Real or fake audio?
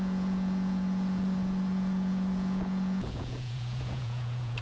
fake